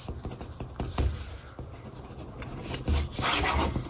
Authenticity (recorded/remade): recorded